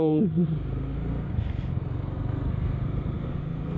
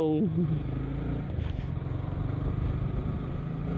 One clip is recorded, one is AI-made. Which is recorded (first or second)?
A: second